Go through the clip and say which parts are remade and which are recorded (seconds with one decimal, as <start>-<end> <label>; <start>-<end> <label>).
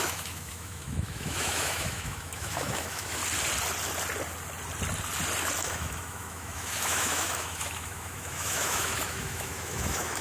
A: 0.0-3.2 remade; 3.2-5.6 recorded; 5.6-10.2 remade